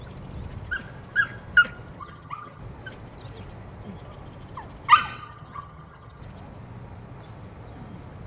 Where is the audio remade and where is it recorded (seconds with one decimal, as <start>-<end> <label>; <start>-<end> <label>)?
0.0-2.0 recorded; 2.0-2.6 remade; 2.6-5.2 recorded; 5.2-6.2 remade; 6.2-8.3 recorded

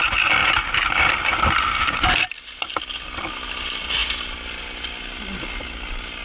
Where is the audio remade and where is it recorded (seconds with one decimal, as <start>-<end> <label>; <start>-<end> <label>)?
0.0-6.2 recorded

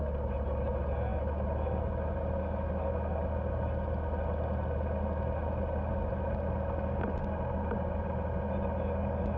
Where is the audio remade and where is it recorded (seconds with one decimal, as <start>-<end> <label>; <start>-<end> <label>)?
0.0-9.4 recorded

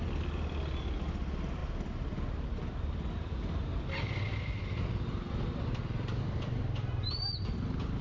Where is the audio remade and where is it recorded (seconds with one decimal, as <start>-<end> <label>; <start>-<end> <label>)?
0.0-8.0 recorded

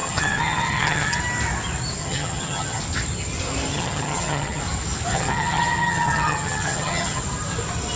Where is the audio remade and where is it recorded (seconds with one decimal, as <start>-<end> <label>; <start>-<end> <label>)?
0.0-1.2 remade; 1.2-2.0 recorded; 2.0-2.8 remade; 2.8-3.7 recorded; 3.7-4.6 remade; 4.6-5.1 recorded; 5.1-7.2 remade; 7.2-8.0 recorded

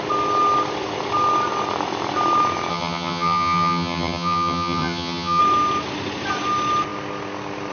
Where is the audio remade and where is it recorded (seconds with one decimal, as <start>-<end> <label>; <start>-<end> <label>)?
0.0-2.7 recorded; 2.7-5.4 remade; 5.4-7.7 recorded

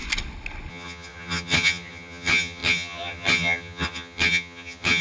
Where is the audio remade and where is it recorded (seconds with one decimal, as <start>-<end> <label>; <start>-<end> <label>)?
0.0-0.7 recorded; 0.7-5.0 remade